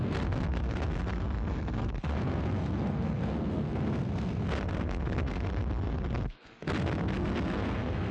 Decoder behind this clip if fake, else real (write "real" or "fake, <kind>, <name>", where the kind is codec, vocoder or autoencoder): fake, codec, SNAC